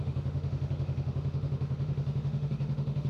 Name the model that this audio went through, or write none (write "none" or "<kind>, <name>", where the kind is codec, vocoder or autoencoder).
autoencoder, DAC-VAE